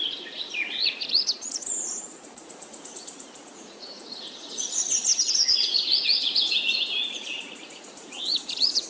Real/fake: fake